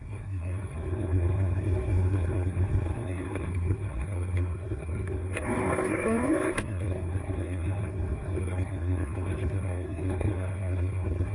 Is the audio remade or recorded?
remade